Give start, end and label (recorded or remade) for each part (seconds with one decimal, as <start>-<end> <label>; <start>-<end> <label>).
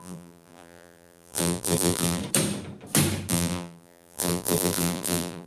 0.0-2.2 remade; 2.2-3.3 recorded; 3.3-5.5 remade